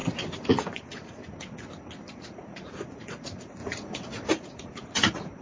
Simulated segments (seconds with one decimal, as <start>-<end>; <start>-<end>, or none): 0.5-1.2; 2.1-5.4